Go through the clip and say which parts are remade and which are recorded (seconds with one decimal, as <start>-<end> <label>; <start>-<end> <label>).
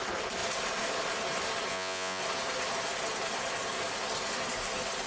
0.0-1.7 recorded; 1.7-2.2 remade; 2.2-5.1 recorded